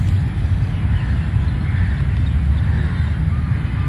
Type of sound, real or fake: real